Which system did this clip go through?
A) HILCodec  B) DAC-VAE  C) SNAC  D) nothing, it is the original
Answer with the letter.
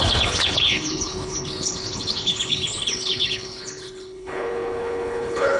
A